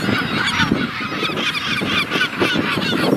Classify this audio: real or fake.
real